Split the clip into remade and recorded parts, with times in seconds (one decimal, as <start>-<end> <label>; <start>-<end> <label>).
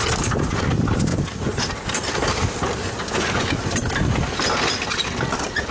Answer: 0.0-1.1 recorded; 1.1-1.7 remade; 1.7-2.8 recorded; 2.8-3.5 remade; 3.5-5.7 recorded